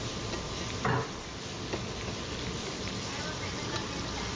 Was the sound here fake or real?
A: real